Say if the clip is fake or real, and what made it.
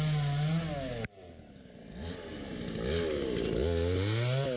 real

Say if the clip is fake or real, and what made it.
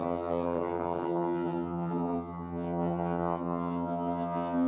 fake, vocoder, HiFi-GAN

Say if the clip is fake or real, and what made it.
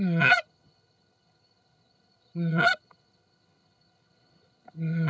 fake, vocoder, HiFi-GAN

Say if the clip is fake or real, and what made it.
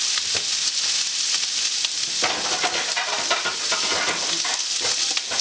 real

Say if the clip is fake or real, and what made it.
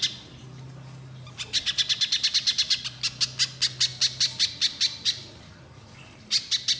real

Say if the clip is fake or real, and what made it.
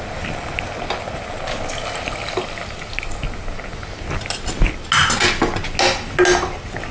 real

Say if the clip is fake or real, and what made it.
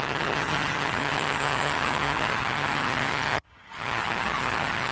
fake, vocoder, HiFi-GAN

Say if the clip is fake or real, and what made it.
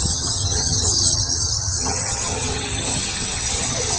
fake, vocoder, HiFi-GAN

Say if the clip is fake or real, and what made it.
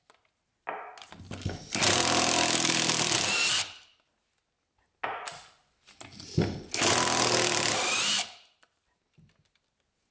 real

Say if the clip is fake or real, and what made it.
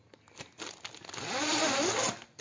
real